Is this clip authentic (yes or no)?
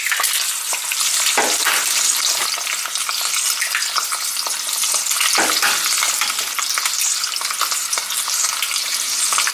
yes